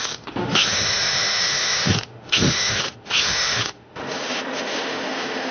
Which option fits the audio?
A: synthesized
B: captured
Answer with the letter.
A